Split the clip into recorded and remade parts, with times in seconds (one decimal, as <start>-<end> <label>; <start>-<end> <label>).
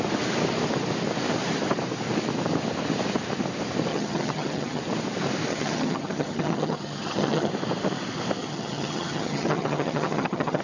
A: 0.0-3.9 recorded; 3.9-4.8 remade; 4.8-5.5 recorded; 5.5-7.5 remade; 7.5-8.4 recorded; 8.4-10.6 remade